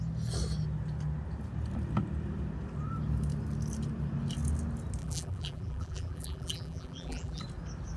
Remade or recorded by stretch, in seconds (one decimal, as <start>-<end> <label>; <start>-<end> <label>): 0.0-5.0 recorded; 5.0-7.4 remade; 7.4-8.0 recorded